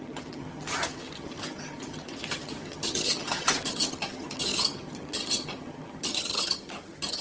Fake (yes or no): yes